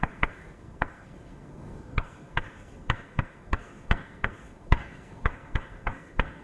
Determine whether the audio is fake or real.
fake